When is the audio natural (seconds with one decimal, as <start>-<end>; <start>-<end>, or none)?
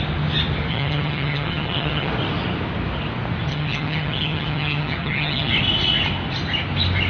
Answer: 0.0-0.7; 2.1-3.5; 5.5-7.1